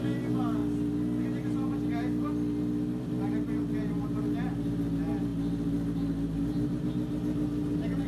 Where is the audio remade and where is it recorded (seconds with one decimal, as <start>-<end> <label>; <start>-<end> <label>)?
0.0-8.1 recorded